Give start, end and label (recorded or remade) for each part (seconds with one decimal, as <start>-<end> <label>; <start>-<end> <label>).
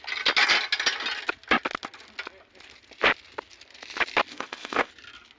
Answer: 0.0-4.3 recorded; 4.3-4.9 remade; 4.9-5.4 recorded